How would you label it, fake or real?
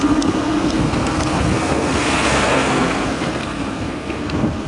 fake